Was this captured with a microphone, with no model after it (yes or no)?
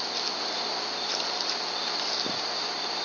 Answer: yes